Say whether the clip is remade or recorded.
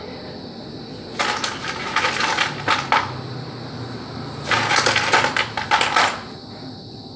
recorded